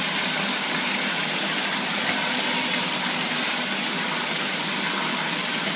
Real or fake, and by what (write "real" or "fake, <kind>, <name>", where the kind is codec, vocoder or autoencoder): real